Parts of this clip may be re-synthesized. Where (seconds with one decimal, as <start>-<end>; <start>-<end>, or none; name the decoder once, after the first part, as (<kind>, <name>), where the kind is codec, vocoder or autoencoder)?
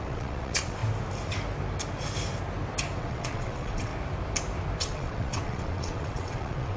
0.0-0.8 (vocoder, WaveNeXt); 3.0-3.9; 4.8-6.8